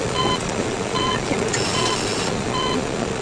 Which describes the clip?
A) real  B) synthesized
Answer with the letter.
B